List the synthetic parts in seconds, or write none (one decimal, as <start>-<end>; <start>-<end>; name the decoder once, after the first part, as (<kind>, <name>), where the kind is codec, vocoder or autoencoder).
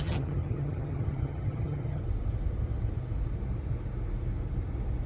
0.0-2.0 (vocoder, HiFi-GAN)